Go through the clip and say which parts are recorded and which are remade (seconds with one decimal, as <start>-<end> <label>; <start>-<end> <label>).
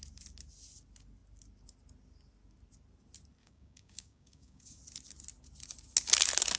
0.0-3.4 recorded; 3.4-4.8 remade; 4.8-6.6 recorded